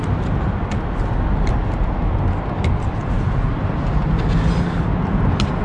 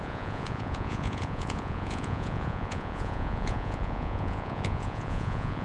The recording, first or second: first